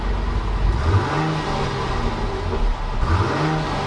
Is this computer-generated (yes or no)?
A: no